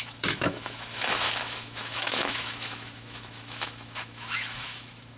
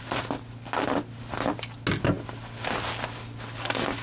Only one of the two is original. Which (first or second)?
second